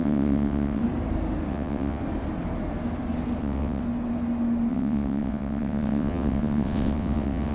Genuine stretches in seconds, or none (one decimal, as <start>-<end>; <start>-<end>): 0.8-1.5; 2.0-3.4; 3.8-4.7